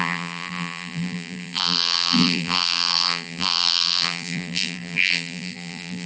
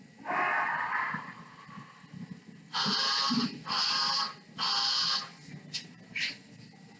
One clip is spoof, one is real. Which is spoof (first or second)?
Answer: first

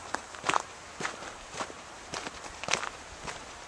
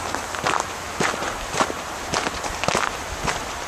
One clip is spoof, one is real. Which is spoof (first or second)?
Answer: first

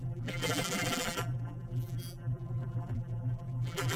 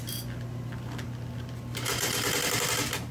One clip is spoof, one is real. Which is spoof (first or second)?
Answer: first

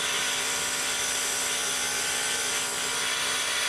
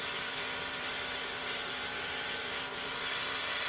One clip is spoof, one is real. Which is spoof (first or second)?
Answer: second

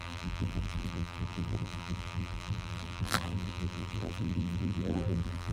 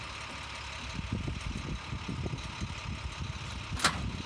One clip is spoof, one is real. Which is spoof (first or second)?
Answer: first